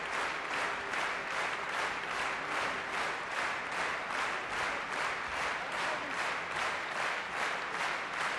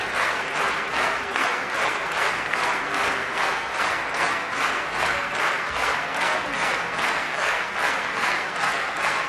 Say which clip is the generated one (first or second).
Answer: second